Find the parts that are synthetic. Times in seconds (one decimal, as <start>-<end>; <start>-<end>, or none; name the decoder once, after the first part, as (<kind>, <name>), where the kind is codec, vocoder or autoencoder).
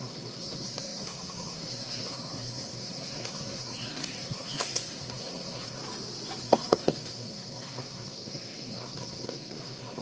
0.0-5.8 (codec, SNAC); 6.4-10.0